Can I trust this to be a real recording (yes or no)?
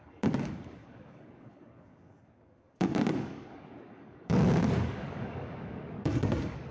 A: no